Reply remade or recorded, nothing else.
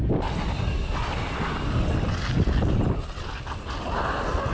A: recorded